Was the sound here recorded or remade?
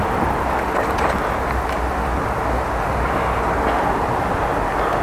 recorded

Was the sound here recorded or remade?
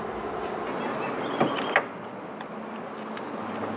recorded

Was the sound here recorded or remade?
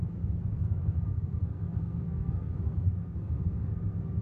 remade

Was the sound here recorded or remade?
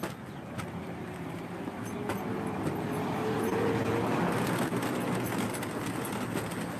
recorded